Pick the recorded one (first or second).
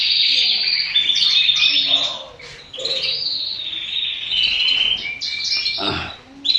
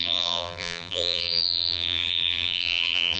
first